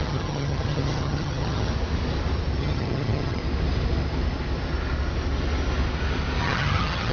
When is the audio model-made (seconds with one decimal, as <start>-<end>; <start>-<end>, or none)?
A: 0.0-1.7; 2.6-3.4; 6.4-7.1

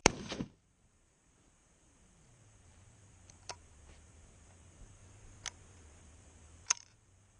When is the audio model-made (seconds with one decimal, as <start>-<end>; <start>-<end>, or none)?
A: 0.0-5.0; 6.0-7.4